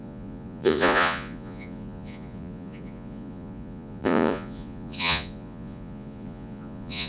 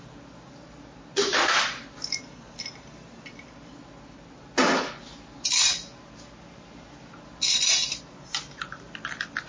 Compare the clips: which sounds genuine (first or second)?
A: second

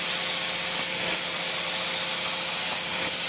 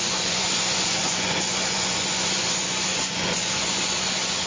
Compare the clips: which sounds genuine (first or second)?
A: first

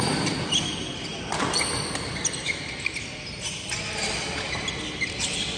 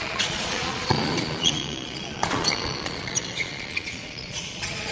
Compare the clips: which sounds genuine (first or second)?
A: first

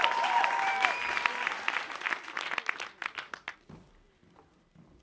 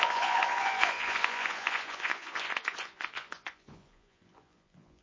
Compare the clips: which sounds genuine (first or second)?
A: first